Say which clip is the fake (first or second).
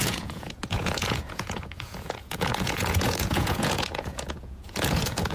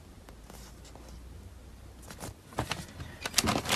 first